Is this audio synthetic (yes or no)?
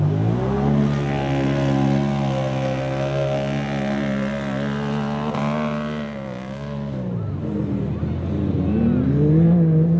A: no